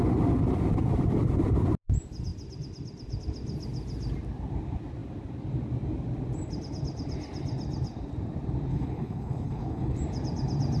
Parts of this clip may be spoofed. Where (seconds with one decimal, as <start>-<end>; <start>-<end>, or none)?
8.7-10.0